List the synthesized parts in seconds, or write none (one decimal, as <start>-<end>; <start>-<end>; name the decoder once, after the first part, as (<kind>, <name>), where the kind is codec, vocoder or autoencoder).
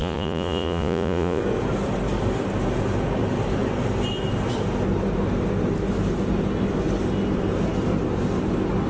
0.0-1.4 (vocoder, Vocos)